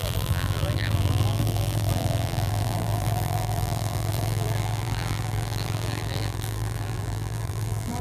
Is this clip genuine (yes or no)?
no